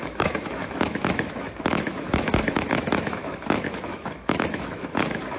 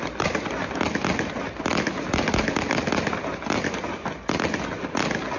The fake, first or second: first